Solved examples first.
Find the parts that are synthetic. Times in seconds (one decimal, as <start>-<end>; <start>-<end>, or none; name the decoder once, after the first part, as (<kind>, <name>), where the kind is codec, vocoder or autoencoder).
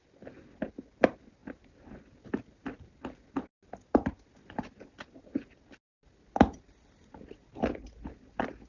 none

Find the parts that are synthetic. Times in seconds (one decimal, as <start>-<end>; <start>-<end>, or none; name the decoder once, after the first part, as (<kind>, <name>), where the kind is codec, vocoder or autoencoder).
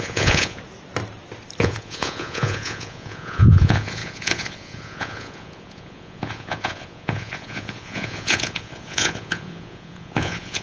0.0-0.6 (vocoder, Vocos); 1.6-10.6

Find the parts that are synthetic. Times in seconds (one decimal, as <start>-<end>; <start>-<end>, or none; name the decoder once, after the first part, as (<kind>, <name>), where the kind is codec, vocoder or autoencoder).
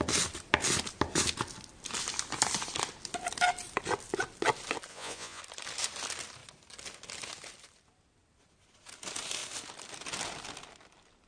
4.9-5.4 (vocoder, Vocos)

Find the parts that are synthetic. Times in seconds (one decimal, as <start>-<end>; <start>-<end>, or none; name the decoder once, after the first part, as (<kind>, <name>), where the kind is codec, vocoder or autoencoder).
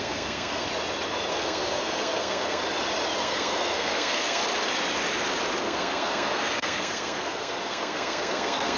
0.0-0.7 (codec, SNAC); 1.3-2.6; 3.2-4.4; 5.6-8.8